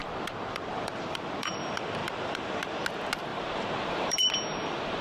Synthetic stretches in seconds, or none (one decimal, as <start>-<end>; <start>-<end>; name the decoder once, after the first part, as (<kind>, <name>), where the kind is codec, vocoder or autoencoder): 0.0-1.6 (vocoder, BigVGAN v2); 2.0-2.7; 3.3-4.3